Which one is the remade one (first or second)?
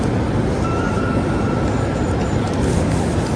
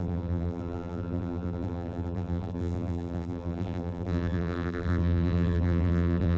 second